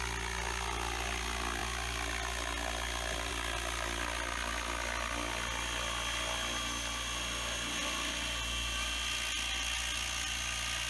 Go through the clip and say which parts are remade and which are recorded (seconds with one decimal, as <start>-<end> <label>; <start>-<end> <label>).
0.0-10.9 recorded